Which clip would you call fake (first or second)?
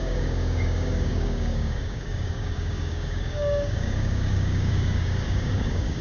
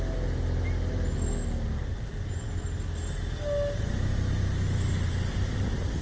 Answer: first